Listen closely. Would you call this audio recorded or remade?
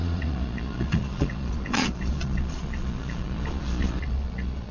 remade